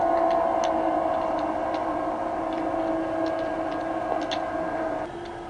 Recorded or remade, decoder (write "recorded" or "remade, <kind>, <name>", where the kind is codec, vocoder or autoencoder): recorded